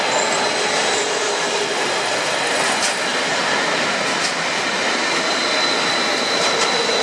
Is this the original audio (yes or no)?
yes